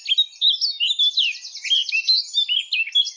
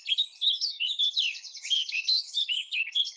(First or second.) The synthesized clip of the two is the second